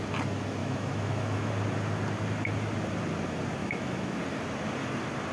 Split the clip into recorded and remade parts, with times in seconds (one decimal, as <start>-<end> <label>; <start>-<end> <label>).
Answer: 0.0-0.6 recorded; 0.6-1.5 remade; 1.5-3.6 recorded; 3.6-4.2 remade; 4.2-5.3 recorded